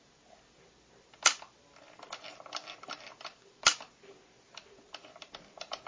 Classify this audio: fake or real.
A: fake